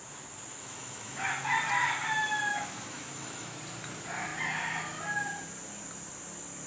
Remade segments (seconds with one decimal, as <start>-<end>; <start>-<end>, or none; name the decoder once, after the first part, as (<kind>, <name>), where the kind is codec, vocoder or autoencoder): 0.5-1.3 (autoencoder, DAC-VAE); 2.5-3.6